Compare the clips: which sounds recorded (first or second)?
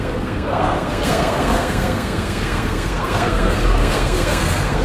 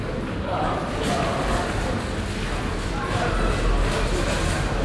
second